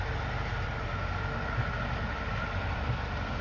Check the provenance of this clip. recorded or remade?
recorded